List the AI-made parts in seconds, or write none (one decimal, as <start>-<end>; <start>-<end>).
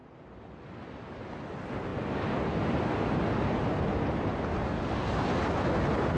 none